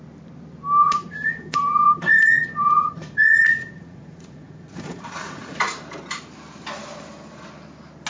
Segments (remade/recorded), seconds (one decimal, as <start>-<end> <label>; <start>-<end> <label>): 0.0-0.8 recorded; 0.8-5.6 remade; 5.6-8.1 recorded